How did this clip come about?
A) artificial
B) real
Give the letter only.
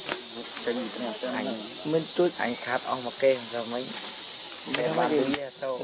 B